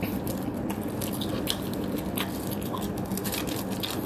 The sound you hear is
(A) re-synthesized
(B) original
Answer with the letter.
B